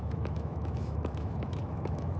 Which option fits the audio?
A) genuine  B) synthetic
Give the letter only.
B